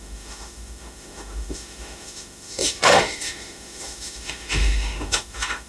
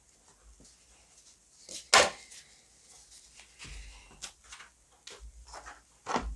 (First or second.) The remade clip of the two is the first